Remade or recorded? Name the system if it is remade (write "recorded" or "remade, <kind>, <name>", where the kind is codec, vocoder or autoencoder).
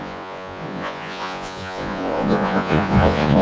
remade, vocoder, Vocos